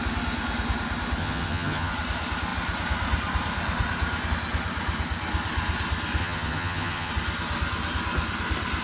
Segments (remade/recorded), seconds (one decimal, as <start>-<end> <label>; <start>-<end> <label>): 0.0-1.2 recorded; 1.2-1.9 remade; 1.9-6.2 recorded; 6.2-7.1 remade; 7.1-8.8 recorded